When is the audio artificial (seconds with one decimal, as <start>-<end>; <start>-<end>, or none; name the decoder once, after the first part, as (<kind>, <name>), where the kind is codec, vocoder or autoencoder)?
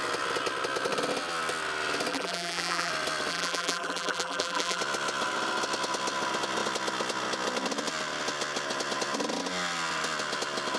2.1-2.9 (vocoder, BigVGAN v2); 3.3-4.8